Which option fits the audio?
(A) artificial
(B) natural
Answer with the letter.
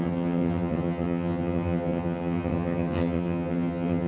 A